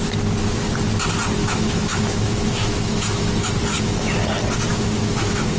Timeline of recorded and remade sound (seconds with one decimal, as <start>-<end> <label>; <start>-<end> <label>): 0.0-1.4 recorded; 1.4-3.3 remade; 3.3-3.7 recorded; 3.7-4.2 remade; 4.2-4.7 recorded; 4.7-5.6 remade